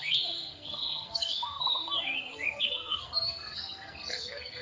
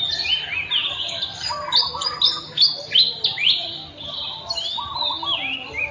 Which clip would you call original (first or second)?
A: second